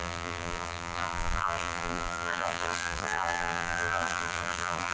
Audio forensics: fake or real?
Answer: fake